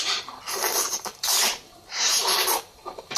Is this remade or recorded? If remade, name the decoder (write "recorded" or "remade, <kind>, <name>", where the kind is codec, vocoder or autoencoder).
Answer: remade, vocoder, BigVGAN v2